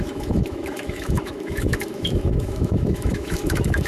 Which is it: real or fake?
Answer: fake